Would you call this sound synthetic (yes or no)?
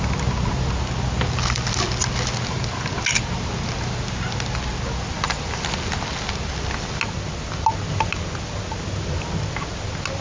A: no